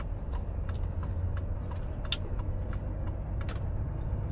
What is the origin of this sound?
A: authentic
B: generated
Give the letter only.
A